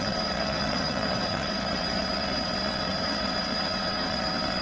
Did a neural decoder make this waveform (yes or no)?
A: yes